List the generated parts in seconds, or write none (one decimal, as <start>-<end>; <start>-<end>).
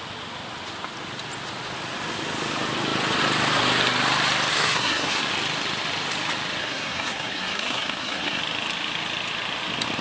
4.5-5.3; 6.6-8.4